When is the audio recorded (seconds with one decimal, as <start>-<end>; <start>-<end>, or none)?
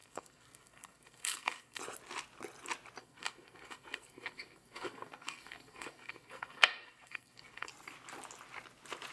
1.8-3.0; 7.7-9.1